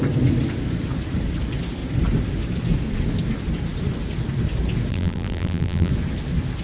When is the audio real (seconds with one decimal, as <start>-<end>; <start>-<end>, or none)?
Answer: 0.0-4.9; 5.9-6.6